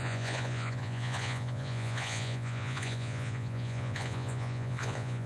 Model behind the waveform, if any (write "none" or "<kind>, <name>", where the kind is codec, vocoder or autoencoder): vocoder, Vocos